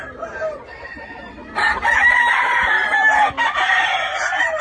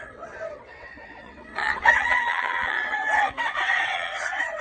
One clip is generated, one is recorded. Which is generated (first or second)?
second